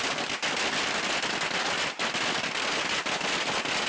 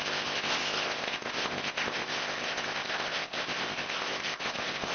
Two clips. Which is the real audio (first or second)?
first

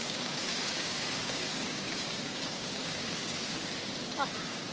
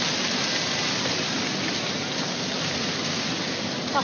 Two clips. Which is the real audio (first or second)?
second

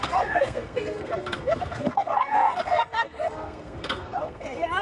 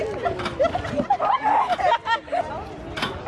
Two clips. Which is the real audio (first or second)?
second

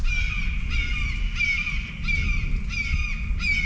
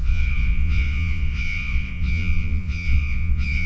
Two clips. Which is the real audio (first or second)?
first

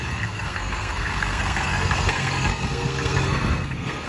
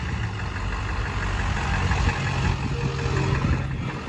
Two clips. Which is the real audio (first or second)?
second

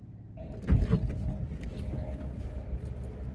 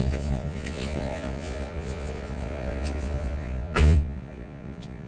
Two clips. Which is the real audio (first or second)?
first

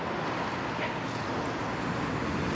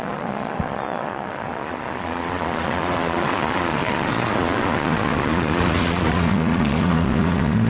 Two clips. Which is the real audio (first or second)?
first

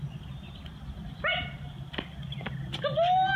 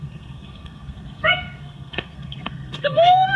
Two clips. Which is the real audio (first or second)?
first